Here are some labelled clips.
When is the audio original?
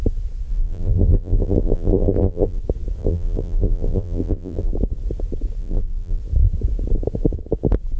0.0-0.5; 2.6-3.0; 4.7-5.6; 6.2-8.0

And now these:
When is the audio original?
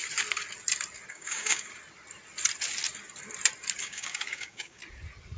0.0-1.1; 1.7-3.8; 4.8-5.4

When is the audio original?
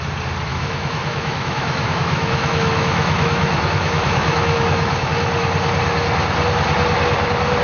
0.0-0.5; 5.1-7.6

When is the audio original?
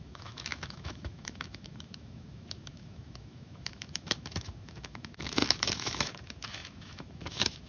none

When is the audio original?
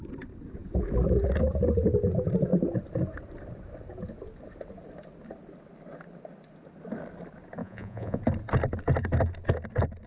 0.0-7.6; 8.2-10.1